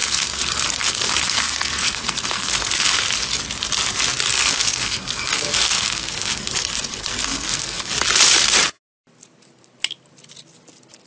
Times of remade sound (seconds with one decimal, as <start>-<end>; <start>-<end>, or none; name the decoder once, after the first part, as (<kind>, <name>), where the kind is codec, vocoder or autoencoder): 0.0-3.0 (codec, SNAC); 4.3-7.9

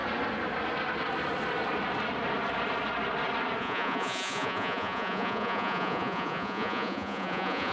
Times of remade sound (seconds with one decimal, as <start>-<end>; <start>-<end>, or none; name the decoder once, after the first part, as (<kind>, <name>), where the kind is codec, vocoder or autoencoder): 3.6-7.7 (vocoder, Vocos)